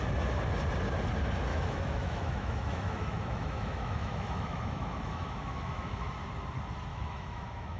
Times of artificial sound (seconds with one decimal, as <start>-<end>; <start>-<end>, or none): 1.5-6.1; 6.9-7.8